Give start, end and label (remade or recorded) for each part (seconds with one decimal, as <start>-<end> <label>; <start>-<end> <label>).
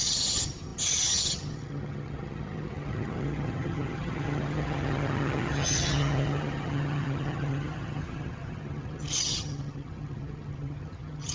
0.0-11.3 remade